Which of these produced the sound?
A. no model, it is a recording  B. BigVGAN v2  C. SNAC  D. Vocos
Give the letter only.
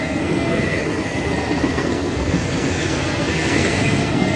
C